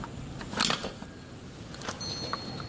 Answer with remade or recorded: recorded